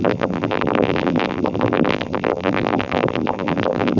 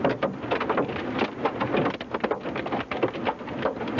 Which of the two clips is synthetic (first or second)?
first